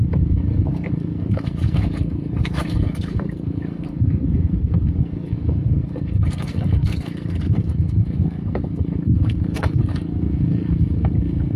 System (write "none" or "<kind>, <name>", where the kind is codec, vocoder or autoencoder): codec, SNAC